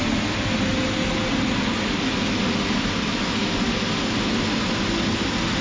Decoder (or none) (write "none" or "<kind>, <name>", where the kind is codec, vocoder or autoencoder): none